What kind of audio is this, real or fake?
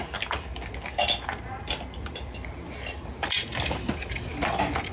real